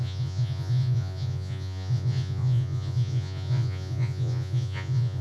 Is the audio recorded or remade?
remade